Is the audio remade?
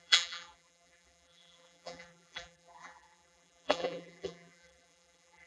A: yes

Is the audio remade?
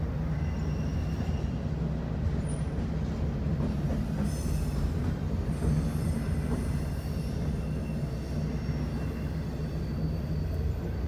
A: no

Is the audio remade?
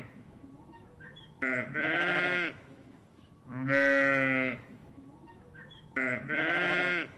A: yes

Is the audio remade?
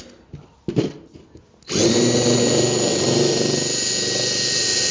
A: no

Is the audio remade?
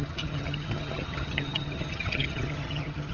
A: yes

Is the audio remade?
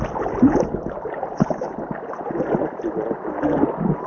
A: no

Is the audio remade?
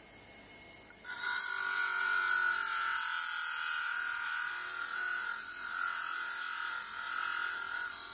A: no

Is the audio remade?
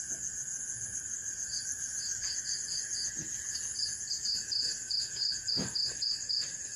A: yes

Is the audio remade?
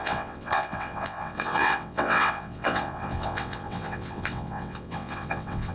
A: yes